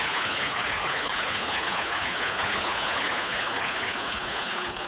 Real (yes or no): no